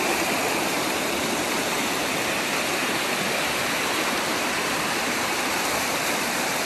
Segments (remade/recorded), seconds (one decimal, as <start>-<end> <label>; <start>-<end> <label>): 0.0-6.7 remade